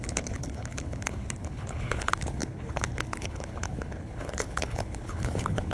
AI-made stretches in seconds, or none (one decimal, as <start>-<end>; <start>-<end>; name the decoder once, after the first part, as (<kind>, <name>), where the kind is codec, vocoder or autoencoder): 0.0-5.7 (codec, HILCodec)